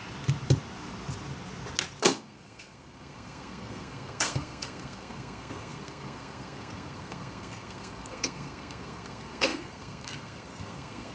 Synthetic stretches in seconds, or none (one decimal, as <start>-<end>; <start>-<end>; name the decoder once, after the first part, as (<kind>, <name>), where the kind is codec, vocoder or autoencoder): 2.0-11.1 (codec, SNAC)